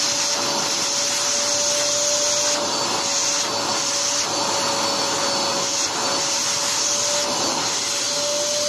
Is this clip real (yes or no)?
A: yes